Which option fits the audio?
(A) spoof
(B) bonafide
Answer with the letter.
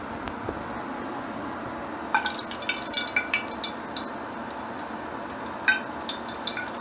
B